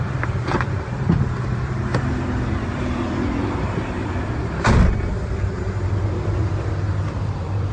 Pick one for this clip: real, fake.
fake